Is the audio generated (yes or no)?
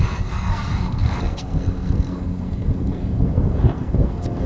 yes